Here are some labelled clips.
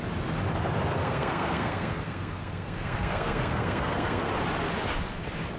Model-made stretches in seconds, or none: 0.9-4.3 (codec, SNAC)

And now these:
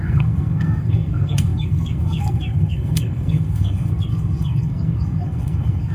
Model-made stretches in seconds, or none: 0.0-5.9 (codec, SNAC)

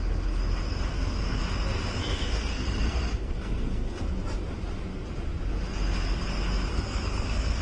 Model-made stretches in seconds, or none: 0.9-1.4 (codec, SNAC); 2.0-4.0; 6.7-7.6

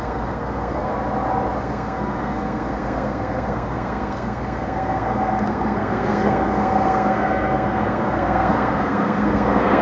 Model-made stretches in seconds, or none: 0.0-0.9 (codec, SNAC); 1.6-9.8

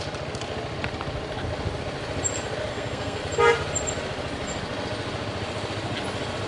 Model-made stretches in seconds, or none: 2.7-3.2 (codec, SNAC)

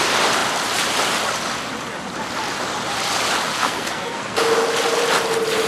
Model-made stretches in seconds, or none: 3.5-4.4 (codec, SNAC)

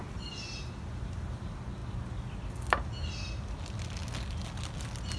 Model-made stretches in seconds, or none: none

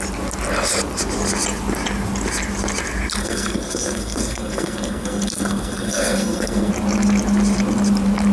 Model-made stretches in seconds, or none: 3.2-6.7 (codec, SNAC)